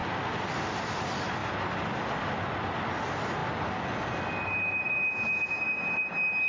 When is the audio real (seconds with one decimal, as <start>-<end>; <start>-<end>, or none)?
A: 0.0-6.5